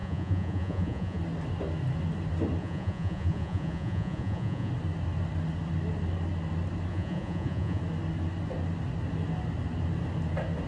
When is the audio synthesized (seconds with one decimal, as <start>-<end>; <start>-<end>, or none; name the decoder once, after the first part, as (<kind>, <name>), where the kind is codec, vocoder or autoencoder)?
0.0-1.2 (vocoder, Vocos); 2.6-4.7; 6.9-7.8